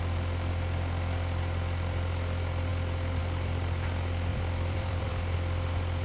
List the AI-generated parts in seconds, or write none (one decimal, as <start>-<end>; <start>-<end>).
4.3-5.1